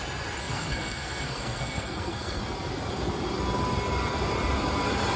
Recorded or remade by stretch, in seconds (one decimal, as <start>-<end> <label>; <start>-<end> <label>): 0.0-0.4 recorded; 0.4-2.4 remade; 2.4-5.2 recorded